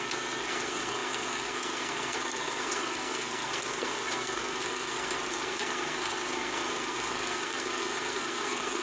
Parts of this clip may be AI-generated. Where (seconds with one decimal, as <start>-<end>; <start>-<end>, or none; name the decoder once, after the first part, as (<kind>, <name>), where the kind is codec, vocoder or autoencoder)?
0.0-8.8 (codec, SNAC)